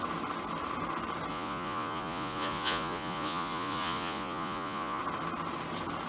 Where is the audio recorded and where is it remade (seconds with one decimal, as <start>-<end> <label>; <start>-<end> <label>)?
0.0-1.3 recorded; 1.3-5.0 remade; 5.0-6.1 recorded